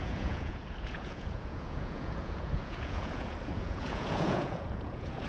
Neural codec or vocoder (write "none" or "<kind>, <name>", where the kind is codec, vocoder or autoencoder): vocoder, Vocos